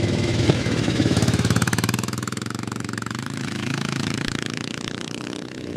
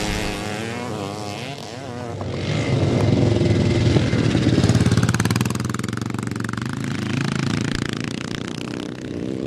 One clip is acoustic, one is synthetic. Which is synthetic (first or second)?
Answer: first